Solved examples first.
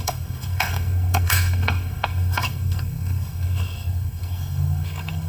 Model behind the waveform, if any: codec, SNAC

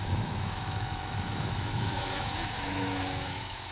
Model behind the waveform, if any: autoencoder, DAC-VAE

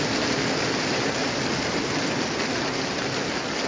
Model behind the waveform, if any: none